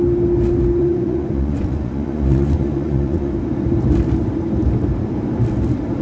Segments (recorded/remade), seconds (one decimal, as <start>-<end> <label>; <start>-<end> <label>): 0.0-0.8 recorded; 0.8-3.3 remade; 3.3-6.0 recorded